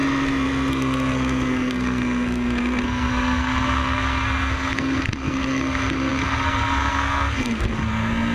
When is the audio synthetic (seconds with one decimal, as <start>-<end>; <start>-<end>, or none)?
0.7-8.3